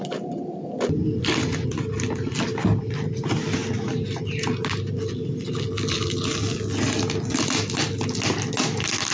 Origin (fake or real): real